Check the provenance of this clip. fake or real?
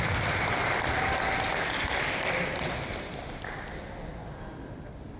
real